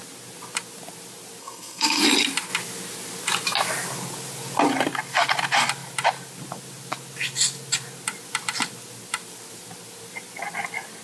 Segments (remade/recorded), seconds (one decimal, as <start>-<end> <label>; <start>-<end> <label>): 0.0-1.4 recorded; 1.4-2.0 remade; 2.0-11.0 recorded